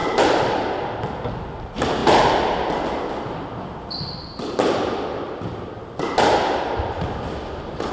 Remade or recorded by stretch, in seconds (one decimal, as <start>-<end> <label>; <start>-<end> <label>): 0.0-1.6 recorded; 1.6-2.0 remade; 2.0-6.6 recorded; 6.6-7.9 remade